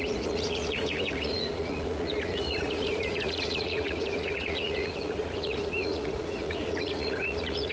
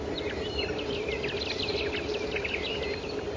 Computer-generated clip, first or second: first